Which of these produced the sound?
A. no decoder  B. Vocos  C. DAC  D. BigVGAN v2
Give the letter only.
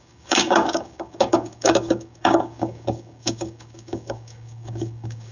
C